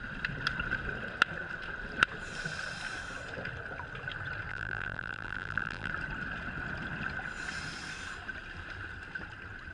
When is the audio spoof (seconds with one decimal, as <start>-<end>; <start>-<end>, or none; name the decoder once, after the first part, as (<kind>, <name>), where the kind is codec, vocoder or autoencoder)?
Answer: 4.5-5.9 (vocoder, BigVGAN v2)